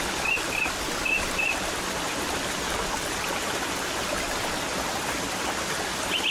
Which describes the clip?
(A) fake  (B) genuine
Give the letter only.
B